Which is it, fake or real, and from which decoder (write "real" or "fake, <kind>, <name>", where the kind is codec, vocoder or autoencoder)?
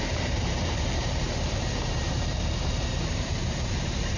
fake, vocoder, BigVGAN v2